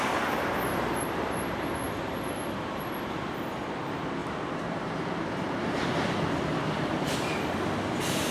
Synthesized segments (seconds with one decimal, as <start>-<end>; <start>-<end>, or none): 4.2-6.2